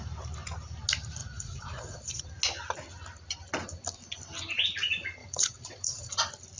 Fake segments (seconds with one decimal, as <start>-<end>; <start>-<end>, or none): 1.2-2.2; 5.2-6.1

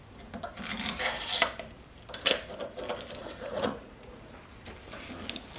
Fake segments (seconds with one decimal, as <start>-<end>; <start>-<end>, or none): 3.2-4.3